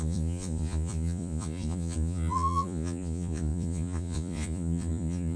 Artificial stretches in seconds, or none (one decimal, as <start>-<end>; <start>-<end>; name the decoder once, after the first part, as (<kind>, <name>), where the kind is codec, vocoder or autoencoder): 0.0-5.4 (vocoder, Vocos)